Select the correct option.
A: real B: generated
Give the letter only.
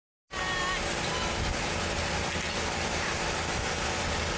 A